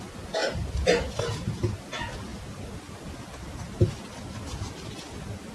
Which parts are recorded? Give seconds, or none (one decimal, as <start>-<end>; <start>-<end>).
0.0-5.5